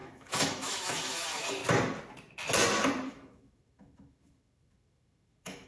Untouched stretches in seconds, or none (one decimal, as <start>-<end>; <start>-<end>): 1.6-3.1